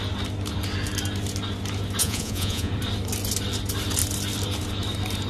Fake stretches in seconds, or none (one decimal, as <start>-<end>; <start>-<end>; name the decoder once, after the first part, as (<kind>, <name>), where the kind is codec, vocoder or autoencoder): 2.0-2.7 (vocoder, Vocos)